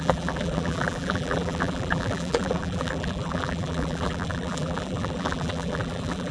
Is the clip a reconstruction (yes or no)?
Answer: yes